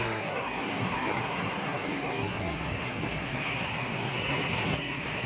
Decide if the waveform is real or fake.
fake